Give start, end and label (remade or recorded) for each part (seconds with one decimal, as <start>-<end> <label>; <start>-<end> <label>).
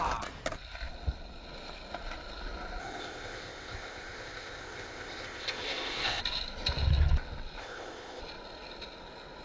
0.0-2.8 recorded; 2.8-6.2 remade; 6.2-7.6 recorded; 7.6-8.2 remade; 8.2-9.4 recorded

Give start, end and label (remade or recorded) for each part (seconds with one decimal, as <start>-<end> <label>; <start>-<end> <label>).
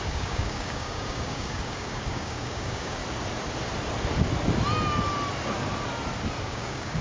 0.0-3.0 remade; 3.0-6.4 recorded; 6.4-7.0 remade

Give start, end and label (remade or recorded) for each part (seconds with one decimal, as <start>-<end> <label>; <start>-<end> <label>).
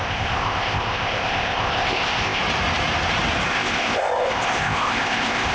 0.0-2.4 remade; 2.4-3.5 recorded; 3.5-5.5 remade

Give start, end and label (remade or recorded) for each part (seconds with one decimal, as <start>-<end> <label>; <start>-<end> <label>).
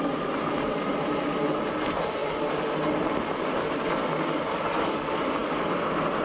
0.0-6.2 recorded